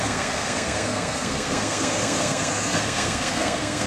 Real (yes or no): no